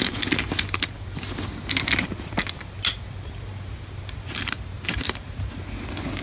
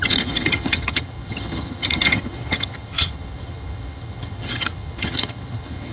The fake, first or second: second